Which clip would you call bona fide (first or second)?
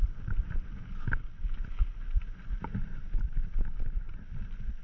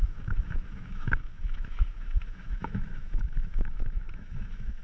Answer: first